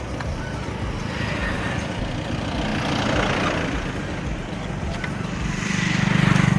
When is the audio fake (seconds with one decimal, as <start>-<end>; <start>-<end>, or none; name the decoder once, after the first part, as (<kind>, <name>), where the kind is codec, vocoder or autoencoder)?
none